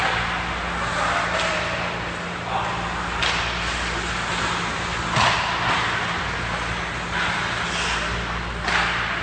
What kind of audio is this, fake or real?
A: real